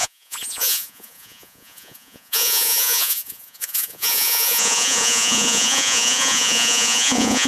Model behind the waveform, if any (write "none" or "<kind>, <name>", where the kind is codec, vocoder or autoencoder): vocoder, Vocos